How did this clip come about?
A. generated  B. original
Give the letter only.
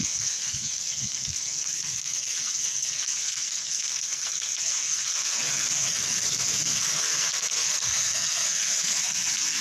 A